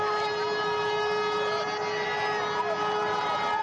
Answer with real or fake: real